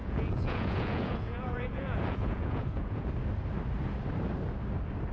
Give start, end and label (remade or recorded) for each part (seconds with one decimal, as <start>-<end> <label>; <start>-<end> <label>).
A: 0.0-3.1 remade; 3.1-5.1 recorded